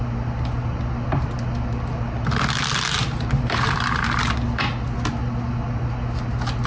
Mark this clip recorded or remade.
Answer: recorded